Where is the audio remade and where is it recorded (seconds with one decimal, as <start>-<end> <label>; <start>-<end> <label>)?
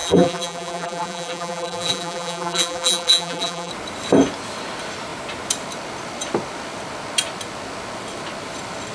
0.0-3.7 remade; 3.7-8.9 recorded